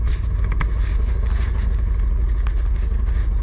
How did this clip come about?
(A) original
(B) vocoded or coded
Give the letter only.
A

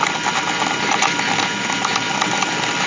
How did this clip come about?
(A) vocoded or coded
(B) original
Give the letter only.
B